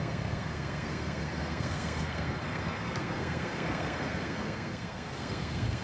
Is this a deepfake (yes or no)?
yes